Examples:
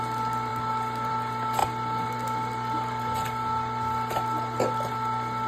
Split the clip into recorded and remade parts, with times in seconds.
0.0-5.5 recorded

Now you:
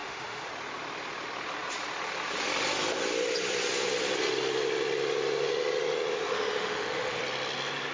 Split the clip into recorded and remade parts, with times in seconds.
0.0-0.5 remade; 0.5-6.3 recorded; 6.3-7.2 remade; 7.2-7.9 recorded

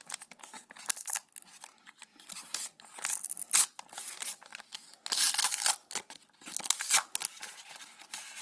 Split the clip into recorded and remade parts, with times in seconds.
0.0-8.4 recorded

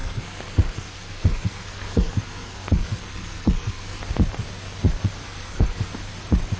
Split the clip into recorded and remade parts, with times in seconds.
0.0-4.0 remade; 4.0-5.2 recorded; 5.2-5.9 remade; 5.9-6.6 recorded